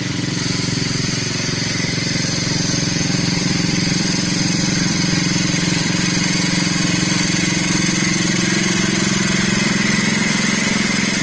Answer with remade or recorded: remade